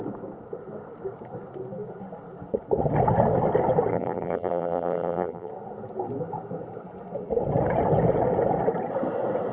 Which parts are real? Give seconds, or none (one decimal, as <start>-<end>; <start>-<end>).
0.0-3.9; 5.5-9.5